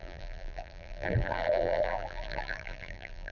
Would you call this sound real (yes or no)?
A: no